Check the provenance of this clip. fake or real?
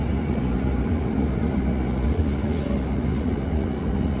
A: fake